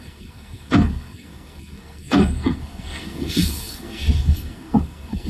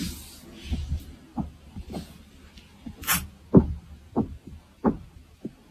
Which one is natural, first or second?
second